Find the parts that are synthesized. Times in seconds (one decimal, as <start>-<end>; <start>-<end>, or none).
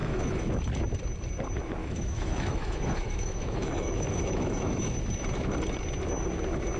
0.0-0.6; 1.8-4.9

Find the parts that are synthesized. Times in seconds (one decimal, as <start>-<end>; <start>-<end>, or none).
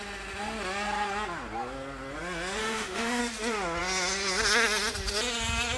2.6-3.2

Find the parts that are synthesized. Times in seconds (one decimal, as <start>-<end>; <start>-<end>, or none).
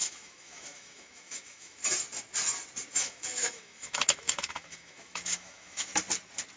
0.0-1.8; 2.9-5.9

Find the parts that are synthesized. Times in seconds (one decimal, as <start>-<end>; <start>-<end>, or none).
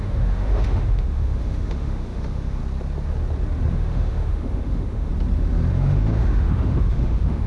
0.0-2.6; 3.7-5.1; 5.7-7.5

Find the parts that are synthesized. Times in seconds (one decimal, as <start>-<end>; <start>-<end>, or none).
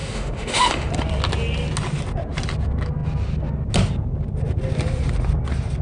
0.0-0.9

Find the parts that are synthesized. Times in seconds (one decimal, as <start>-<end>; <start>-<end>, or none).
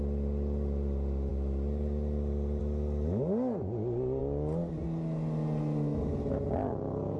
none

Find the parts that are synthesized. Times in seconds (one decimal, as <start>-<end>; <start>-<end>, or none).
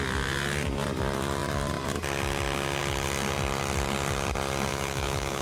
4.7-5.4